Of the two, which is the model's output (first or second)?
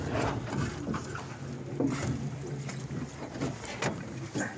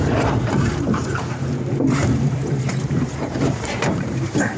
second